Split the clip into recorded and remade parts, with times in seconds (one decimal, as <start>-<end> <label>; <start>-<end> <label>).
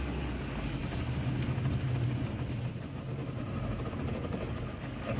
0.0-0.8 remade; 0.8-3.9 recorded; 3.9-5.2 remade